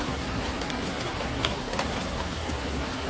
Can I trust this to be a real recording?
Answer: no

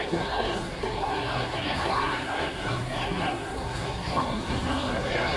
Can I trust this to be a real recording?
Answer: no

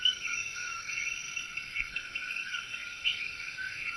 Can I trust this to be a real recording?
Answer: no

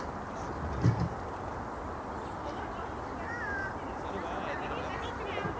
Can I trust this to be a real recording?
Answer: yes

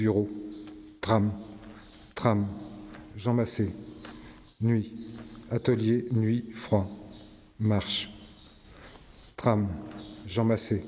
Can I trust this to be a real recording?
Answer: yes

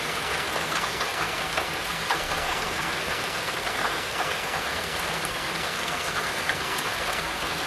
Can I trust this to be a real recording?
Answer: no